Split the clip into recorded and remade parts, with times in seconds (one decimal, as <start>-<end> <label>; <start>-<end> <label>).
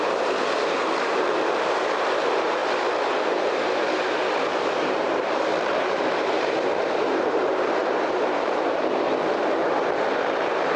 0.0-2.6 remade; 2.6-4.5 recorded; 4.5-10.8 remade